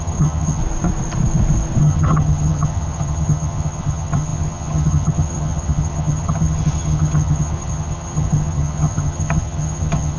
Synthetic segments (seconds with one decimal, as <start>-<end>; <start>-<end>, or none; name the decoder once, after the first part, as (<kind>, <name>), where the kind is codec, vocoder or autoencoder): 0.0-0.6 (vocoder, HiFi-GAN); 1.8-10.2